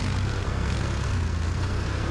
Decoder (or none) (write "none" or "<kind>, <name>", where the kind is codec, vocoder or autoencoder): codec, SNAC